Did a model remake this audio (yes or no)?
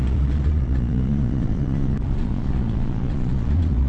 yes